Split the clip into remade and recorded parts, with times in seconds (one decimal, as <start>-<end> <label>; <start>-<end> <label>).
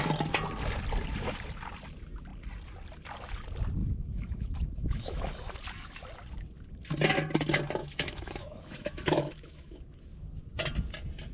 0.0-3.8 recorded; 3.8-5.3 remade; 5.3-7.8 recorded; 7.8-9.8 remade; 9.8-11.3 recorded